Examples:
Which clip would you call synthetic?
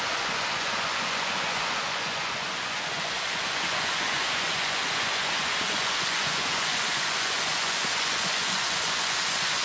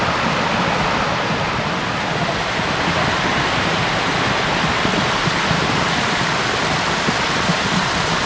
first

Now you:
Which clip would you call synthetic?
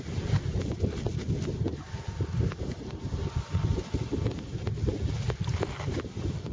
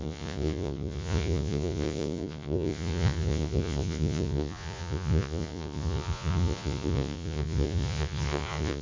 second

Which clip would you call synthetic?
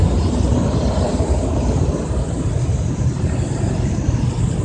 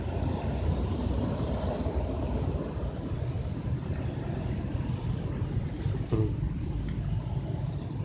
second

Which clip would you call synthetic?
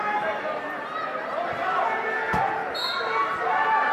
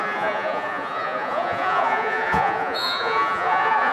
second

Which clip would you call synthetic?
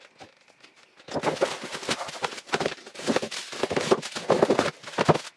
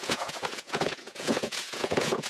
second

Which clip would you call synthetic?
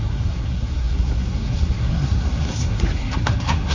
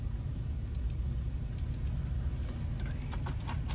first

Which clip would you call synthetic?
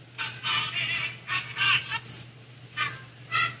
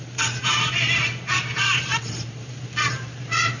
second